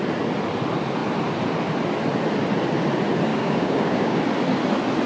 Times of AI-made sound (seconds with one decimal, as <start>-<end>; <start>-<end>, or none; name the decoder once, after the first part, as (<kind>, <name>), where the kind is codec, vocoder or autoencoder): 3.3-4.2 (codec, DAC)